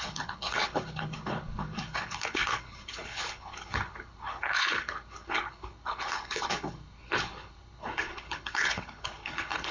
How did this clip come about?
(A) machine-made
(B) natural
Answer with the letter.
A